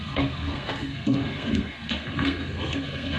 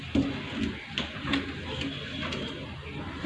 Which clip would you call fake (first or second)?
first